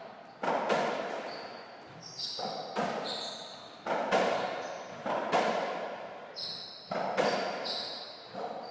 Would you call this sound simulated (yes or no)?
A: no